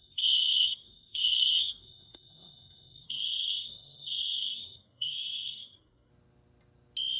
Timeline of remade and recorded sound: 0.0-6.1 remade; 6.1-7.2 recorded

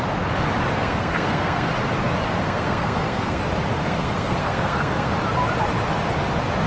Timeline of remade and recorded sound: 0.0-0.7 recorded; 0.7-1.7 remade; 1.7-2.4 recorded; 2.4-3.4 remade; 3.4-3.8 recorded; 3.8-5.1 remade; 5.1-6.7 recorded

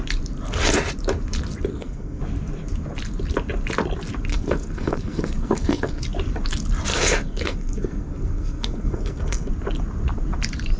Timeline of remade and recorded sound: 0.0-1.7 recorded; 1.7-2.2 remade; 2.2-4.3 recorded; 4.3-6.0 remade; 6.0-6.9 recorded; 6.9-9.5 remade; 9.5-10.8 recorded